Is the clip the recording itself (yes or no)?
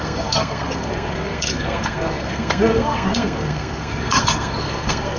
no